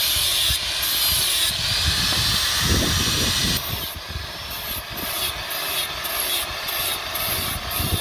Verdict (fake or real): real